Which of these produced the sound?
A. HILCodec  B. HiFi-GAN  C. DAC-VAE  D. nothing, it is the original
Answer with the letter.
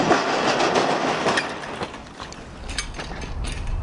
D